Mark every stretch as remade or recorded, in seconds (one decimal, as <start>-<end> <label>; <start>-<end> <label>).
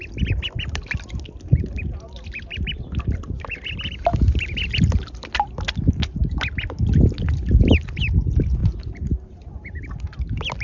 0.0-10.6 recorded